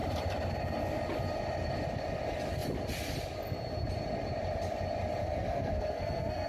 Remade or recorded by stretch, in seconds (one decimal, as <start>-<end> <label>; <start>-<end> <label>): 0.0-5.2 recorded; 5.2-6.5 remade